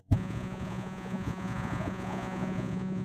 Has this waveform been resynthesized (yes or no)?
yes